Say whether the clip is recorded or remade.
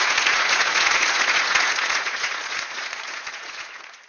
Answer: remade